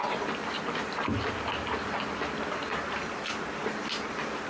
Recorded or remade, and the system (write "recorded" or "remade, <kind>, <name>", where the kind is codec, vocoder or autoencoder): recorded